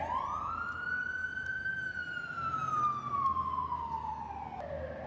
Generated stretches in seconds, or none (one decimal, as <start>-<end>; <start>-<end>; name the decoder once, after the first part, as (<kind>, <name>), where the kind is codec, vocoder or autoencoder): none